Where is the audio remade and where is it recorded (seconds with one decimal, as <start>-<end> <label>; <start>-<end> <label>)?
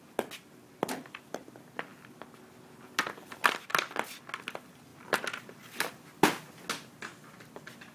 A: 0.0-4.9 recorded; 4.9-6.5 remade; 6.5-7.9 recorded